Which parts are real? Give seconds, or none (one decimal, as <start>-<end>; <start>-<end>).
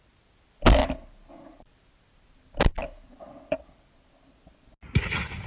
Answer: 0.0-5.5